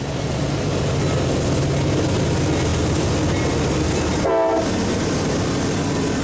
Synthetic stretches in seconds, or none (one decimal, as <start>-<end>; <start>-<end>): none